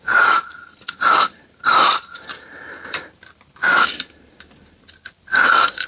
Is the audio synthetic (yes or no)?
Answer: yes